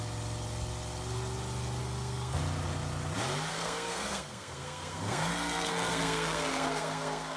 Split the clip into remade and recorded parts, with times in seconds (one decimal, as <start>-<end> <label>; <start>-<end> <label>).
0.0-1.8 recorded; 1.8-2.4 remade; 2.4-3.5 recorded; 3.5-7.4 remade